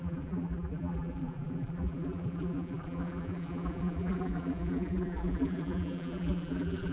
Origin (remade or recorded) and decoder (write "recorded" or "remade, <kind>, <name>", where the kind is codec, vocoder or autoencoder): remade, vocoder, BigVGAN v2